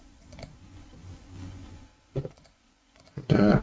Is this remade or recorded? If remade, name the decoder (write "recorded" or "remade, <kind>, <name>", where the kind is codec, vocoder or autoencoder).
remade, vocoder, Vocos